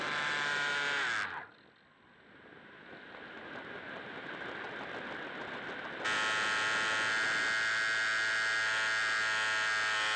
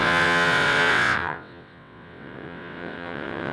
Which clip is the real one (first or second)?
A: first